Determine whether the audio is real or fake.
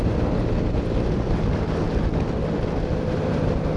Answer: real